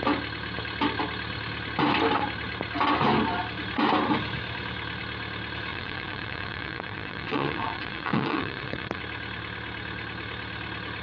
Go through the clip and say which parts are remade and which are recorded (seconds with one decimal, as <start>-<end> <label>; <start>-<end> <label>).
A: 0.0-5.7 recorded; 5.7-9.0 remade; 9.0-11.0 recorded